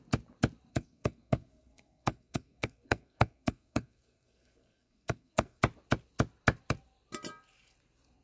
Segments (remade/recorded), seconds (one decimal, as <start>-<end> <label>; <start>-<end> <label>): 0.0-0.7 recorded; 0.7-5.6 remade; 5.6-8.2 recorded